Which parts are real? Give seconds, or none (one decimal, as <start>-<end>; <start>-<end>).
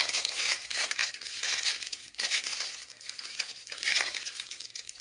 none